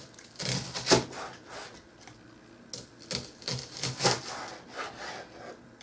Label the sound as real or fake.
real